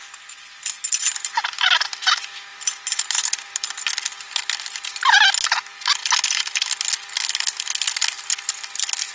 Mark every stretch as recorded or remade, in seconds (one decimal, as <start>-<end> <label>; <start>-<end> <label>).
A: 0.0-9.1 recorded